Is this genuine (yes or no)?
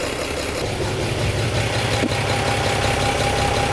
yes